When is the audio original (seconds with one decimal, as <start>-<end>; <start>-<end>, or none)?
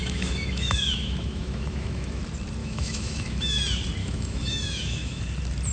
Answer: 2.2-2.6; 3.6-4.0; 5.2-5.7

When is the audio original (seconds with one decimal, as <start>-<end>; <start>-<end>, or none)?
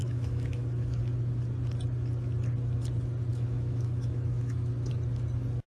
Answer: 1.0-3.3; 4.9-5.8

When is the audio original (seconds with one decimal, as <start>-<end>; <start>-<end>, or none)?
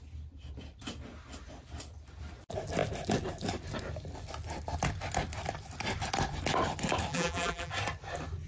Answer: 0.0-7.1; 7.7-8.5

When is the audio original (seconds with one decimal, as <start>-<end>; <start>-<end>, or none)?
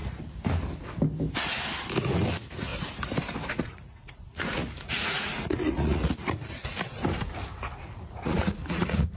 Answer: 0.0-2.3; 2.7-3.5; 6.7-7.7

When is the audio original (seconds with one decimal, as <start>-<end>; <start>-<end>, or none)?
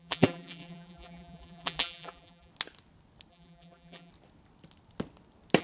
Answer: 2.5-3.3; 4.1-5.6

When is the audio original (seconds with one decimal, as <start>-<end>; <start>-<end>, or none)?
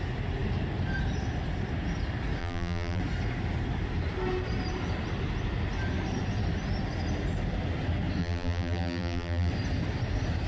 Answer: 0.0-2.4; 3.0-8.2; 9.5-10.5